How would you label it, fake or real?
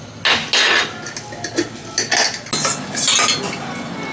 real